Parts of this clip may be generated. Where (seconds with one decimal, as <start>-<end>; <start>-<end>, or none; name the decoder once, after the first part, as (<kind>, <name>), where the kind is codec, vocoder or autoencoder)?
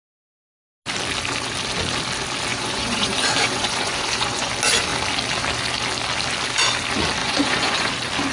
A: 2.5-4.5 (vocoder, Vocos); 7.2-7.9